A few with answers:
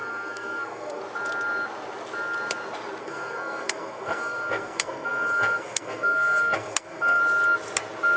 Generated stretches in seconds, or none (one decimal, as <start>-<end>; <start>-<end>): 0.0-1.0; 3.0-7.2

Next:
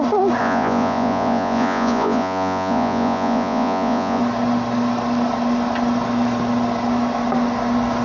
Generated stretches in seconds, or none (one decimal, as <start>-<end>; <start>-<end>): 0.4-4.2

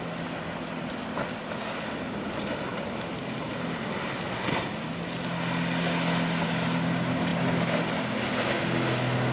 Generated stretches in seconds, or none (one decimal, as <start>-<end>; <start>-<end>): 2.7-3.9

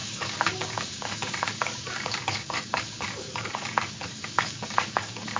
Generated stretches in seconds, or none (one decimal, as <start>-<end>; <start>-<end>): 0.0-5.4

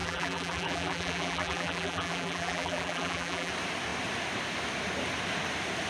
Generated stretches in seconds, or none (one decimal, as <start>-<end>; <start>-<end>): 0.0-3.5

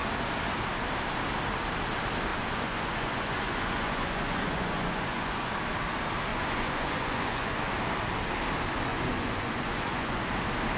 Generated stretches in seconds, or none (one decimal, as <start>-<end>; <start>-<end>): 2.3-5.5; 6.3-7.7; 8.9-10.2

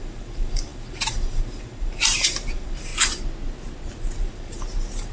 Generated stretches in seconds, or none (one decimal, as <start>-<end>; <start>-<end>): 0.0-2.9; 3.9-5.1